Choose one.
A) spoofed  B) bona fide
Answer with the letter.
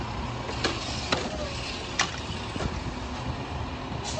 B